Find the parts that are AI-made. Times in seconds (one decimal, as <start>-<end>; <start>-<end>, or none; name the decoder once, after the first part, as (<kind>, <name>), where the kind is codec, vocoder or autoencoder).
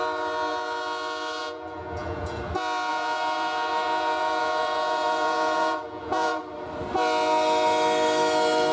1.4-2.4 (vocoder, Vocos); 2.9-6.4